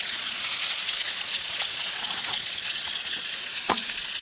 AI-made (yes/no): yes